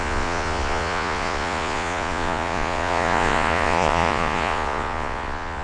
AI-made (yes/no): yes